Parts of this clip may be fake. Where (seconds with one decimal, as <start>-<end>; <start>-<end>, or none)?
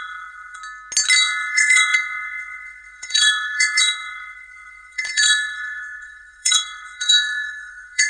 0.0-0.6; 1.2-8.1